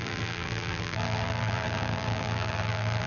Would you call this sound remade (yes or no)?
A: yes